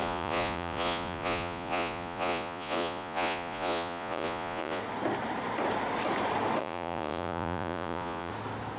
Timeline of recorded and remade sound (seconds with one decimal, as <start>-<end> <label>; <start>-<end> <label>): 0.0-4.8 remade; 4.8-6.6 recorded; 6.6-8.3 remade; 8.3-8.8 recorded